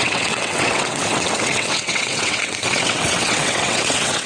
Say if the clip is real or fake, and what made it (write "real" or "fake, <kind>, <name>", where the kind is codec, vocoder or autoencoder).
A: fake, vocoder, WaveNeXt